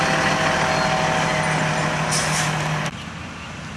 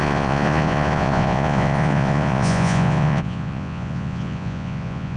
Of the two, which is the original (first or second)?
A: first